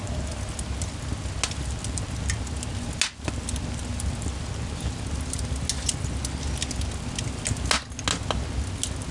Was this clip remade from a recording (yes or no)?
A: no